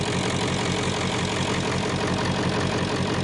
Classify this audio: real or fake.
real